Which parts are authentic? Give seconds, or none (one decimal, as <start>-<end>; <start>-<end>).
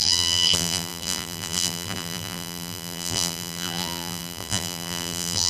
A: none